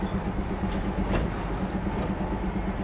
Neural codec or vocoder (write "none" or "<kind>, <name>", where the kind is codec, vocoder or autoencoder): none